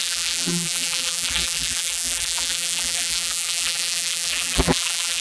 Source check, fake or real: fake